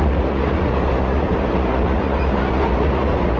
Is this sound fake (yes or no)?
yes